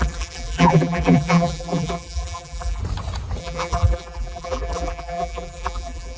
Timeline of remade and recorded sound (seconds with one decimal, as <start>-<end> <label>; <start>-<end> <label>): 0.0-2.8 remade; 2.8-3.4 recorded; 3.4-6.2 remade